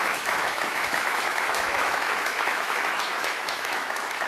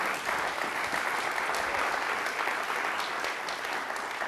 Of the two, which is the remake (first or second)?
first